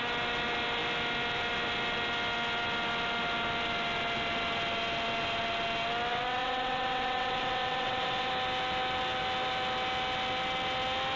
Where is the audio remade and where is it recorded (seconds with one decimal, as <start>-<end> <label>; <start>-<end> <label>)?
0.0-6.1 recorded; 6.1-8.3 remade; 8.3-11.2 recorded